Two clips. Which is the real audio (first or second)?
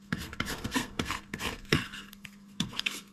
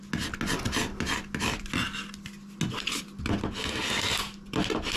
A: second